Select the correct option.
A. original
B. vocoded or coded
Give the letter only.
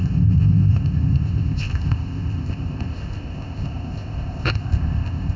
B